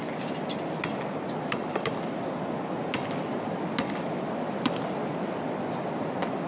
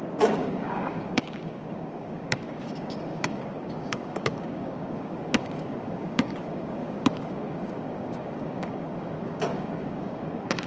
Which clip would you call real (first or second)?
first